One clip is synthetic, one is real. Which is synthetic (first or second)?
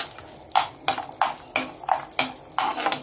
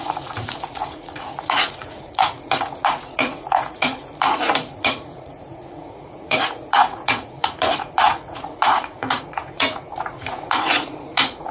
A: second